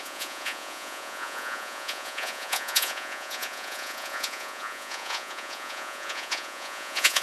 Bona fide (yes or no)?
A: no